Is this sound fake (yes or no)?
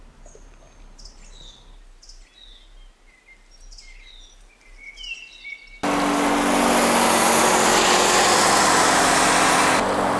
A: no